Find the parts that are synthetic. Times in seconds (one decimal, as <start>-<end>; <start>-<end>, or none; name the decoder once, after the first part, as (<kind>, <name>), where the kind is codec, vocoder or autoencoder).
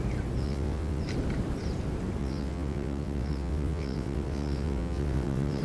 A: 0.4-1.0 (vocoder, WaveNeXt); 2.2-5.6